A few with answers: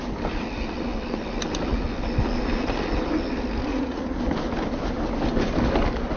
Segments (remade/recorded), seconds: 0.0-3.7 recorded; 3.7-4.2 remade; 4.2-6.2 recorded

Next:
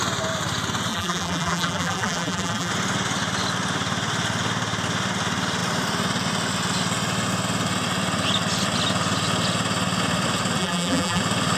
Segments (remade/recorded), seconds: 0.0-0.9 recorded; 0.9-2.7 remade; 2.7-10.6 recorded; 10.6-11.2 remade; 11.2-11.6 recorded

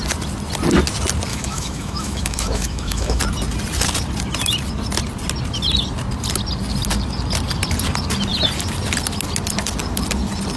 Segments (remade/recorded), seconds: 0.0-1.3 recorded; 1.3-3.2 remade; 3.2-10.6 recorded